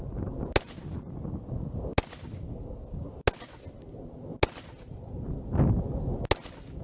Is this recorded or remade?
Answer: recorded